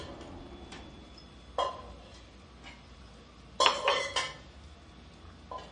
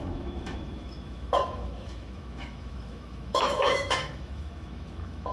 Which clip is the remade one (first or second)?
second